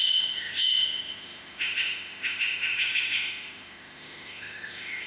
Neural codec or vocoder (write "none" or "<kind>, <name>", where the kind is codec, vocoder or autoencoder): autoencoder, DAC-VAE